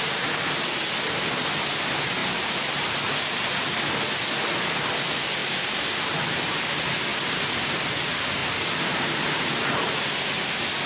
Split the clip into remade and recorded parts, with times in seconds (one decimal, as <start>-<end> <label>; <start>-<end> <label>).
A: 0.0-2.2 recorded; 2.2-3.5 remade; 3.5-5.4 recorded; 5.4-6.2 remade; 6.2-7.1 recorded; 7.1-7.8 remade; 7.8-8.4 recorded; 8.4-9.9 remade; 9.9-10.9 recorded

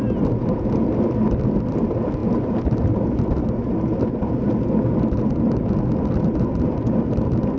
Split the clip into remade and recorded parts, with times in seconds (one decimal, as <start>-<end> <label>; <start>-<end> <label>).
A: 0.0-7.6 recorded

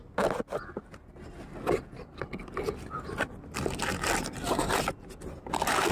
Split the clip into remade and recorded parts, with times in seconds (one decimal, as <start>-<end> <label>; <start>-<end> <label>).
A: 0.0-5.9 recorded

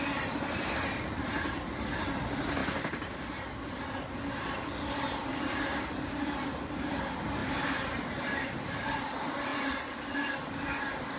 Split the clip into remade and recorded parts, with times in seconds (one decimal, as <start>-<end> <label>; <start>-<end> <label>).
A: 0.0-5.3 recorded; 5.3-7.0 remade; 7.0-7.4 recorded; 7.4-8.0 remade; 8.0-11.2 recorded

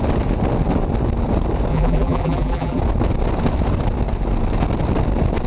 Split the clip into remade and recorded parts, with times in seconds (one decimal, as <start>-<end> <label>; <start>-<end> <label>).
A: 0.0-1.7 recorded; 1.7-2.8 remade; 2.8-5.5 recorded

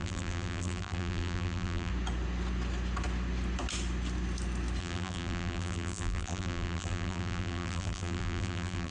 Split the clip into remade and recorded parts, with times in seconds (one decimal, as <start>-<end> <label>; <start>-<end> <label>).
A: 0.0-1.9 remade; 1.9-4.8 recorded; 4.8-8.9 remade